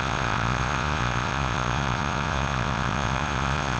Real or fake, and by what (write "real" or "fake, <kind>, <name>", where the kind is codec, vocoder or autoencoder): fake, vocoder, Vocos